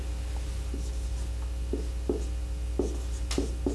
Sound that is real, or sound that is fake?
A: real